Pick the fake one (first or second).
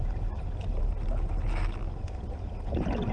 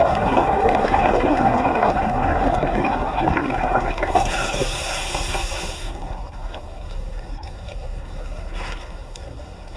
second